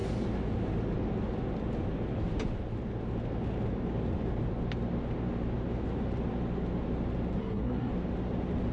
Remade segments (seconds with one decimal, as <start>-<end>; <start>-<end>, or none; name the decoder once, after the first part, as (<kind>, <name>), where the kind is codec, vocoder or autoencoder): 7.4-7.9 (codec, SNAC)